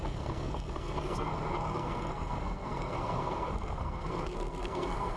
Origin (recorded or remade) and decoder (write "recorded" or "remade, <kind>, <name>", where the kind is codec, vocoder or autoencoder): remade, codec, SNAC